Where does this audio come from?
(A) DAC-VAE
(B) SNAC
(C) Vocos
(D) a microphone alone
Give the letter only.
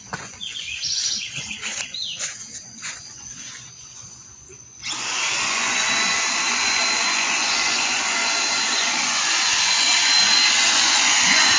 C